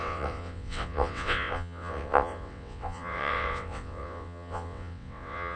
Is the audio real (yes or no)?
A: no